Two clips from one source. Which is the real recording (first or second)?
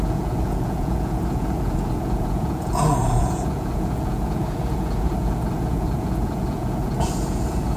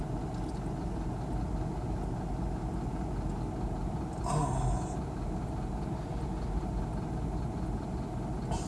second